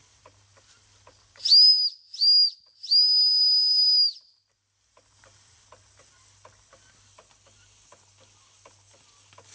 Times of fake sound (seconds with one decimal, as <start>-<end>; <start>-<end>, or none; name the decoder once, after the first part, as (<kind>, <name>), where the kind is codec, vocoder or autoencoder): none